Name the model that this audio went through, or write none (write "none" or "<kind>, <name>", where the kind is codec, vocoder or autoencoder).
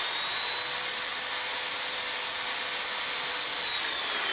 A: none